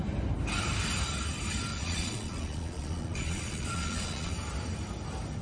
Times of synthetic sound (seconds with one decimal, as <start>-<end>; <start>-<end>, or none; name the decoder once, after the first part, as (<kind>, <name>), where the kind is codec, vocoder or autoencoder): 1.7-4.3 (vocoder, Vocos)